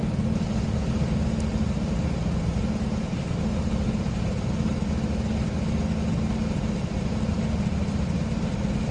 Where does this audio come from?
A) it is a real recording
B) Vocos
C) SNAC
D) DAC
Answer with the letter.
A